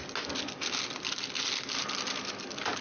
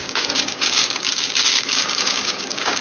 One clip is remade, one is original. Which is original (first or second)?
first